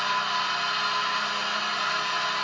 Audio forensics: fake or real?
real